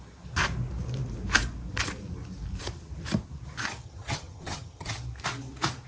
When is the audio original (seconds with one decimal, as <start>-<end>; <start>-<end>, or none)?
0.0-3.8; 4.9-5.9